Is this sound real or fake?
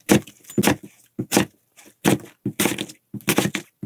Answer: real